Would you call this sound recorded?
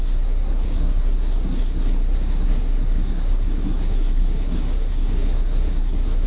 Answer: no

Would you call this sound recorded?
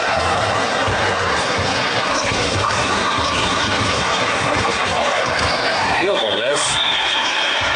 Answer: no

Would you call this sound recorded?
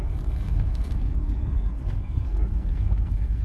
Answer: no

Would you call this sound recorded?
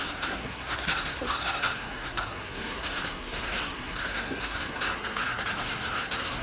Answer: no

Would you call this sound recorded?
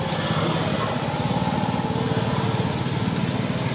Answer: yes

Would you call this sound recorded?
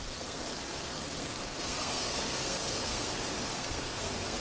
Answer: no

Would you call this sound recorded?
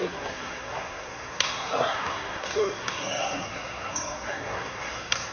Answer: no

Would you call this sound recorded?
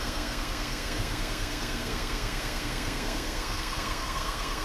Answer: no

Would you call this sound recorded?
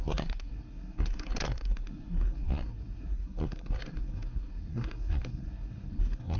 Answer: no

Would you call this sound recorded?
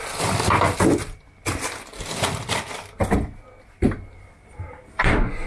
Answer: yes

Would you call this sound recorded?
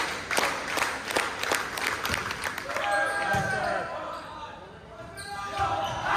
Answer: yes